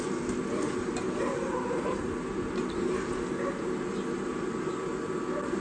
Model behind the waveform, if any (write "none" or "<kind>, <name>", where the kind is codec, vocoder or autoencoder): none